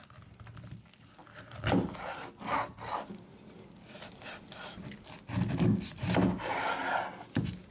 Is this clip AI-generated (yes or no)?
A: no